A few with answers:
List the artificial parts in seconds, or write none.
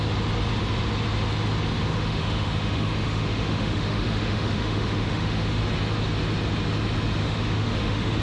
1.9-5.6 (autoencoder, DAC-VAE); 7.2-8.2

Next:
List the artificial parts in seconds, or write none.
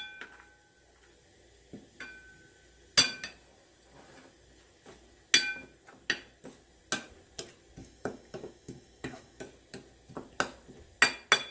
7.8-9.4 (autoencoder, DAC-VAE)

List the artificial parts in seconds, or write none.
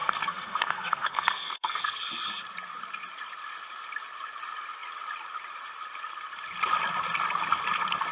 0.0-2.0 (codec, SNAC)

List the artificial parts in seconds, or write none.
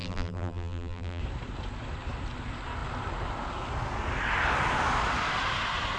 0.0-1.2 (vocoder, BigVGAN v2)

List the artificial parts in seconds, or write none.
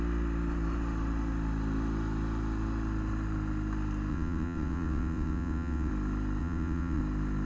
4.1-5.9 (vocoder, WaveNeXt); 6.4-7.0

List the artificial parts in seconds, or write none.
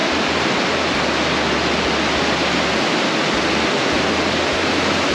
none